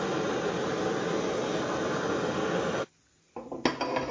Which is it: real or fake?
real